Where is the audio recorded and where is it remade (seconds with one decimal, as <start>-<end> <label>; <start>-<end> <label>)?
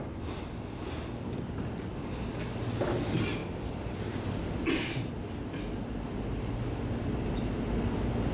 0.0-3.4 recorded; 3.4-5.1 remade; 5.1-8.3 recorded